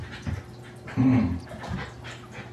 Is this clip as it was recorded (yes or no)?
yes